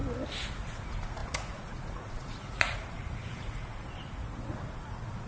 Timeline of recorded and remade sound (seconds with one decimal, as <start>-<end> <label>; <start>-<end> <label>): 0.0-0.6 recorded; 0.6-5.3 remade